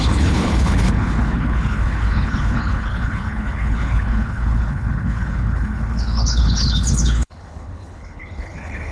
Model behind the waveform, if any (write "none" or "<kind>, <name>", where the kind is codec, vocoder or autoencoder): codec, HILCodec